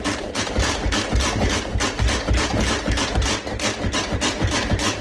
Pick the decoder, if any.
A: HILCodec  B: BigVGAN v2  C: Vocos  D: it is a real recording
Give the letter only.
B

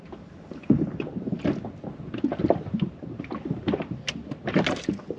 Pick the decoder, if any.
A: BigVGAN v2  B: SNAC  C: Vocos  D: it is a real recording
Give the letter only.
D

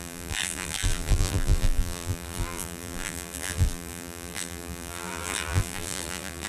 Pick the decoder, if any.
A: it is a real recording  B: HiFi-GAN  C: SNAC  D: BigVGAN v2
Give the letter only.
D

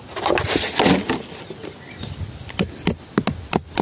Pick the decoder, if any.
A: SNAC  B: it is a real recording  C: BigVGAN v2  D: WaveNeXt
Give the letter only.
B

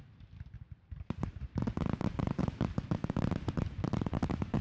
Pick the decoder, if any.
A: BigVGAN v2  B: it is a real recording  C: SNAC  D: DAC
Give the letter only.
A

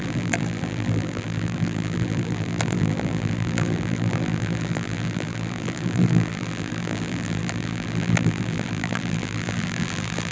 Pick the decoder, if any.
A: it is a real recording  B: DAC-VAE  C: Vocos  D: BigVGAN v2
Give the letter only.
D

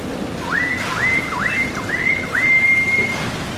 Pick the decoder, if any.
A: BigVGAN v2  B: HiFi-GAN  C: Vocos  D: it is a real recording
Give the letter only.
D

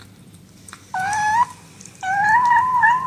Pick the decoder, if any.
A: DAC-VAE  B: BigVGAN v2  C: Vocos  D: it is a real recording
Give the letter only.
D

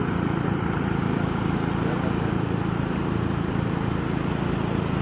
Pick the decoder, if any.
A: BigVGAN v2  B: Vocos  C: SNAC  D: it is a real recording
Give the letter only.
A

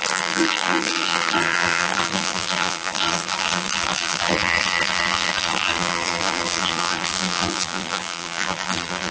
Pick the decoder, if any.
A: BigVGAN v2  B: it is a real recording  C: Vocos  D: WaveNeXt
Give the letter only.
A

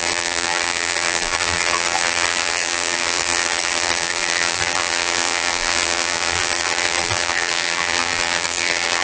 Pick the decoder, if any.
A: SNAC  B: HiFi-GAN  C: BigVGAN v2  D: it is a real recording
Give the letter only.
C